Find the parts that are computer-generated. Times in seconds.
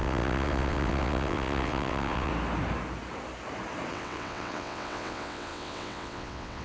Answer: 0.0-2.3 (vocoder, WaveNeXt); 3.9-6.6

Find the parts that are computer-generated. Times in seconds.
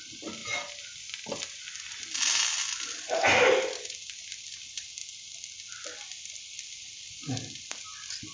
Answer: none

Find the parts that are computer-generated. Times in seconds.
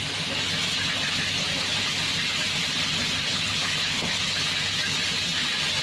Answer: 3.3-4.2 (codec, HILCodec)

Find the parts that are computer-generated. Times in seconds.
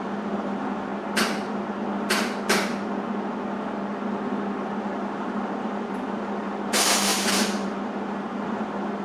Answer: 0.0-0.9 (vocoder, BigVGAN v2); 4.8-9.0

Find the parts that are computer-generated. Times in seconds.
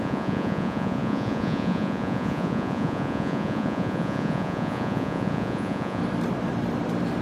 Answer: 0.0-6.0 (vocoder, Vocos)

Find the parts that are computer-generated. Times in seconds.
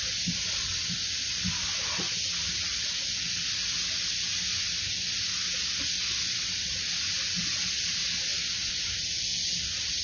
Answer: 8.3-10.0 (vocoder, BigVGAN v2)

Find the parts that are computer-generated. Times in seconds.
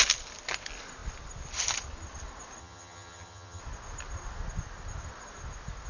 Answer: 2.6-3.6 (vocoder, HiFi-GAN)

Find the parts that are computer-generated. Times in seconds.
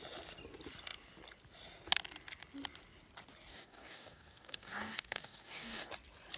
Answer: 3.5-5.9 (codec, DAC)